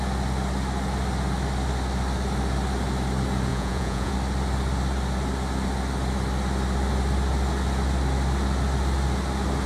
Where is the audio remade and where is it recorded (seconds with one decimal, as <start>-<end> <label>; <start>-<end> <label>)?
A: 0.0-3.5 recorded; 3.5-4.1 remade; 4.1-9.7 recorded